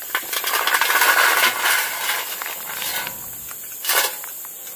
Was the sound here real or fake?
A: real